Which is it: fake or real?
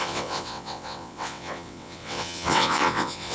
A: fake